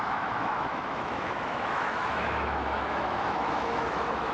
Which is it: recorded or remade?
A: remade